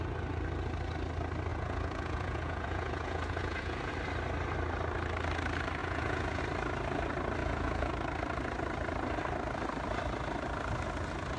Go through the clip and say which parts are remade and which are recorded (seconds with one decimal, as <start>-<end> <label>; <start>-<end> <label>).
0.0-1.5 recorded; 1.5-3.9 remade; 3.9-5.8 recorded; 5.8-6.4 remade; 6.4-7.4 recorded; 7.4-7.9 remade; 7.9-11.4 recorded